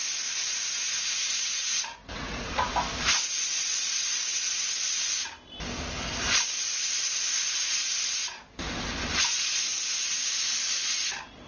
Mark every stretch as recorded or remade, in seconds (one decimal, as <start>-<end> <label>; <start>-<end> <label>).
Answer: 0.0-2.7 remade; 2.7-11.5 recorded